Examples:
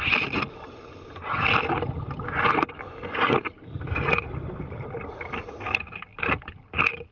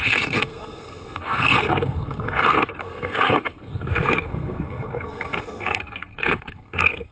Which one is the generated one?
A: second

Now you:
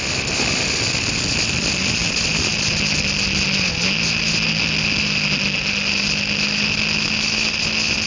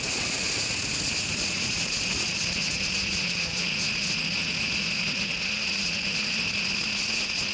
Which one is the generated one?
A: second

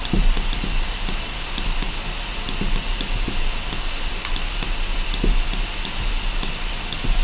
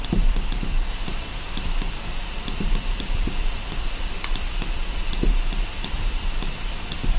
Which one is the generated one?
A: second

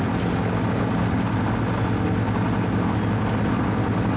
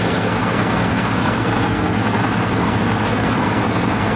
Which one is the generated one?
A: second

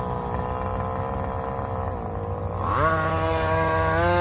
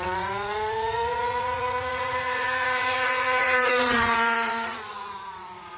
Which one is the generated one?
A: second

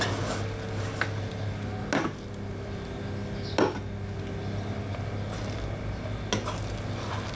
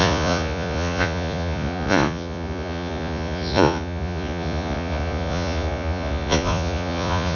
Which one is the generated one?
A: second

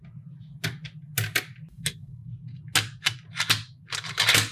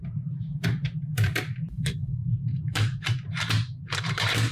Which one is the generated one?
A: second